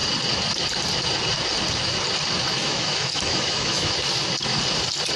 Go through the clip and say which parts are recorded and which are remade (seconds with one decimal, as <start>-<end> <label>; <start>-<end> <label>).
0.0-2.6 recorded; 2.6-3.9 remade; 3.9-5.2 recorded